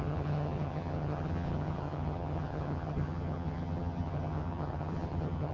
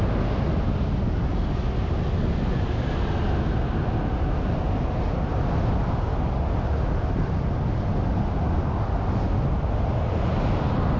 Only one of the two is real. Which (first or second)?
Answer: second